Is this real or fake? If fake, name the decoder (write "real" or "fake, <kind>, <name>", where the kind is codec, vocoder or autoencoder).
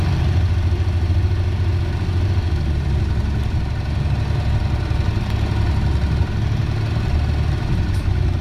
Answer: real